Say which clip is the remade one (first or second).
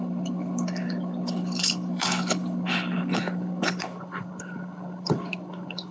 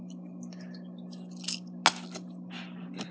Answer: first